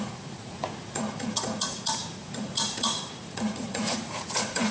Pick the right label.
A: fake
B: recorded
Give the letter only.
A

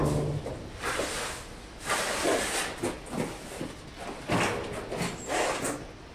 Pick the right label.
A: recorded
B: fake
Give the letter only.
A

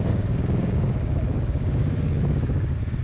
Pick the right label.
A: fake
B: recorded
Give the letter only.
A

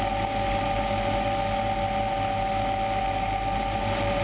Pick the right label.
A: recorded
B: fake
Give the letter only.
A